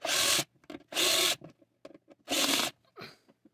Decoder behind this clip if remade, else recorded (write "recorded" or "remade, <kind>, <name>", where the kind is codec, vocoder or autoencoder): recorded